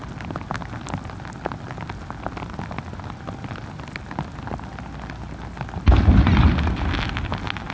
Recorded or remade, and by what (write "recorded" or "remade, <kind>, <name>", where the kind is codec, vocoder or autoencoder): recorded